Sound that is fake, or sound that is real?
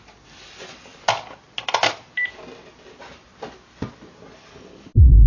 real